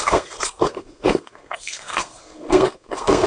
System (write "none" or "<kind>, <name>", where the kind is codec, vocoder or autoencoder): codec, SNAC